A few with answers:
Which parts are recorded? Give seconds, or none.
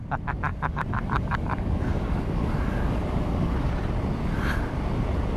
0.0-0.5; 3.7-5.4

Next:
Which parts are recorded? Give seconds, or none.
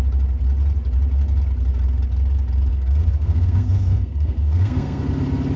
0.0-2.7; 5.0-5.6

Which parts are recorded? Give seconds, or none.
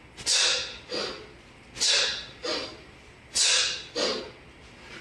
0.0-2.4; 4.2-5.0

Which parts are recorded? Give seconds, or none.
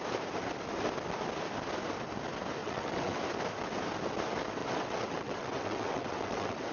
0.0-2.6; 3.2-4.6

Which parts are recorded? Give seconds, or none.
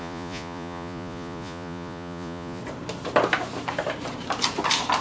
2.6-5.0